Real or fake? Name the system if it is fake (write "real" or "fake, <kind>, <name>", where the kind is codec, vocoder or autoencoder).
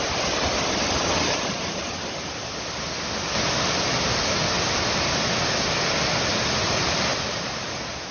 real